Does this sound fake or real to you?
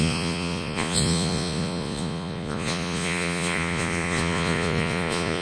fake